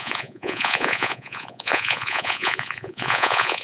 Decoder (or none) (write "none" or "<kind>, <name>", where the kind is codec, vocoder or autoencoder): vocoder, Vocos